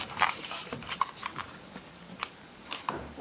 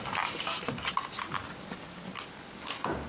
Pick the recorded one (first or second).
second